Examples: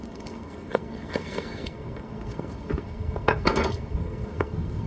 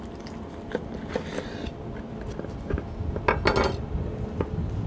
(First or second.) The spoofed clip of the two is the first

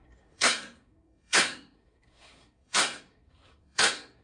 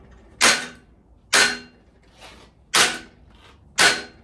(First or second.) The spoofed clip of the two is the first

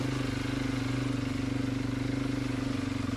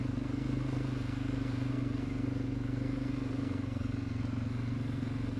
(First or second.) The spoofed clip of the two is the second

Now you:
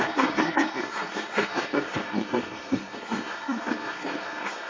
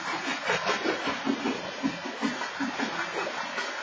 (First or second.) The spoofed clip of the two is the first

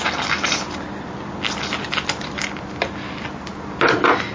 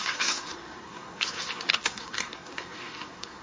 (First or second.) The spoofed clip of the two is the second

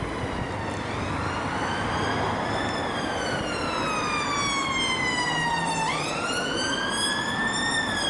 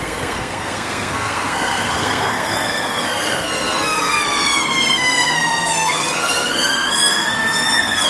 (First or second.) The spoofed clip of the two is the second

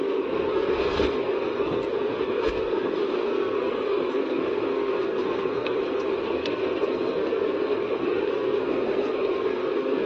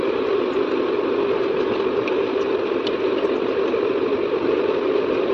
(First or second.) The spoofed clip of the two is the first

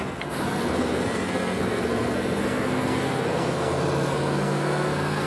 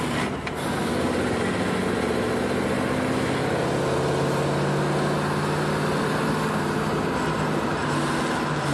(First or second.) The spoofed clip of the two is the first